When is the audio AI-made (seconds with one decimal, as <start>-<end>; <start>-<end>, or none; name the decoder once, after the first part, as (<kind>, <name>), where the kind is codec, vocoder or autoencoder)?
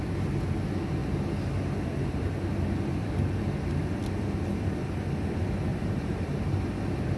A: 5.7-6.4 (vocoder, BigVGAN v2)